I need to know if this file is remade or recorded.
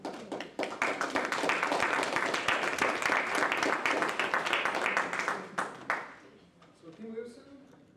recorded